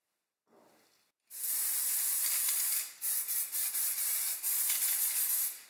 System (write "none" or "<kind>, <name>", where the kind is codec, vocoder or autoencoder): none